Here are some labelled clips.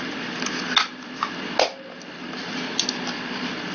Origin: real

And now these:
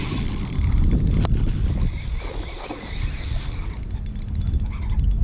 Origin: real